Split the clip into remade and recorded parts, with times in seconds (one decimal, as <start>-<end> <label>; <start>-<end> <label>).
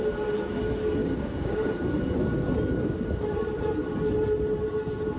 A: 0.0-1.0 recorded; 1.0-1.7 remade; 1.7-5.2 recorded